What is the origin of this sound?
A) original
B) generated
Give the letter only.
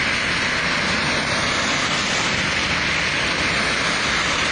A